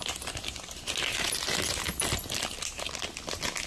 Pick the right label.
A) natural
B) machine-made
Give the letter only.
A